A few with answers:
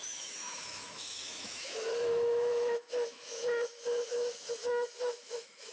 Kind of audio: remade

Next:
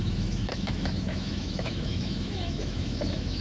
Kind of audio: remade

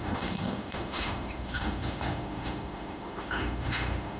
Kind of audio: remade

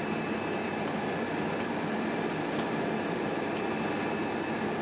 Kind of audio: recorded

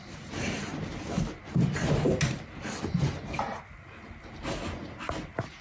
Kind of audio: recorded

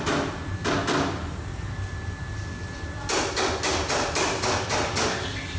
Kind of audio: recorded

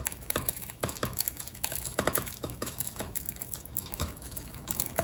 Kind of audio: remade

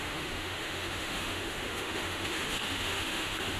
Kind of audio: remade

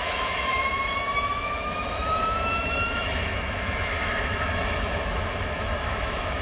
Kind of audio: remade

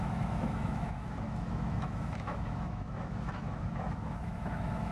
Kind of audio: remade